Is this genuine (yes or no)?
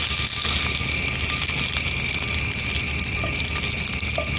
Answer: yes